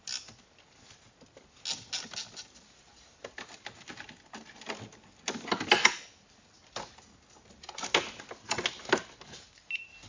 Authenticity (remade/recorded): recorded